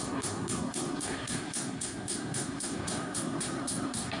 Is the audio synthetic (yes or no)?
yes